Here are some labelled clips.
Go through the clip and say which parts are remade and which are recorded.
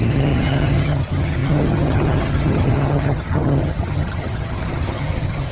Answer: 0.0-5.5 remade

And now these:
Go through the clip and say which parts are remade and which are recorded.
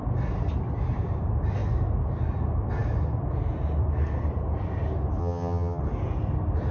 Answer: 0.0-5.2 recorded; 5.2-5.8 remade; 5.8-6.7 recorded